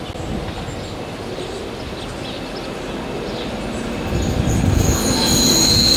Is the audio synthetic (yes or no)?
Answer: no